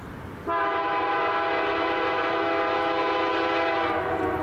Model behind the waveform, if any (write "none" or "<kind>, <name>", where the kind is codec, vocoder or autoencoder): none